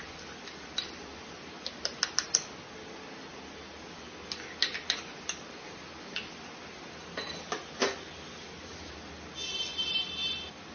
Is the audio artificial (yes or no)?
no